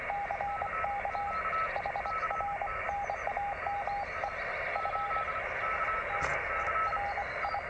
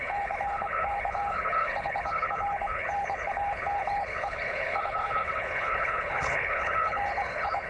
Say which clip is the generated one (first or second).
second